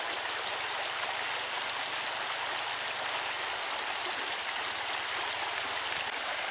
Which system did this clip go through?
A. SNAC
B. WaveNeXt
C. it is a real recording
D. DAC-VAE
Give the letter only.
C